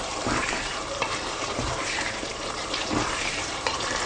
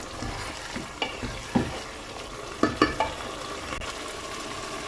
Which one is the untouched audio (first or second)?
second